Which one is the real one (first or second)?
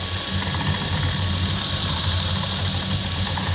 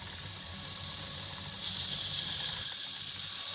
first